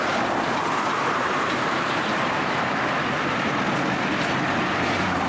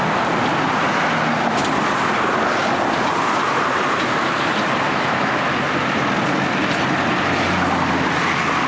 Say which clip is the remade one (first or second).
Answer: first